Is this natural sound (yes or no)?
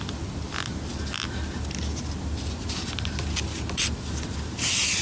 yes